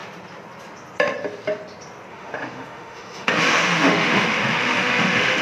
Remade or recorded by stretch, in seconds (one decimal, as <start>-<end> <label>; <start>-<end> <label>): 0.0-2.1 recorded; 2.1-5.4 remade